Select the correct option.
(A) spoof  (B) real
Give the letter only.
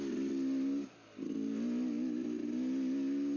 B